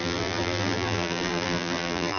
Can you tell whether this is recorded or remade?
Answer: remade